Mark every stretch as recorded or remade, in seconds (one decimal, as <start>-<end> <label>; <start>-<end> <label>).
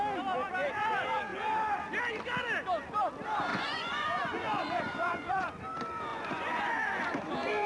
0.0-3.5 recorded; 3.5-5.6 remade; 5.6-6.1 recorded; 6.1-7.0 remade; 7.0-7.7 recorded